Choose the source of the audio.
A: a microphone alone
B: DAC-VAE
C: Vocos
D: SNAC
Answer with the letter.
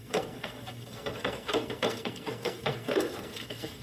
D